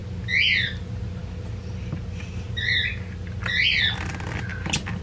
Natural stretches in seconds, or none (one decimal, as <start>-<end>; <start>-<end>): 0.0-5.0